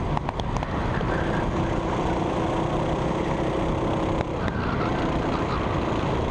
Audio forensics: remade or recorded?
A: recorded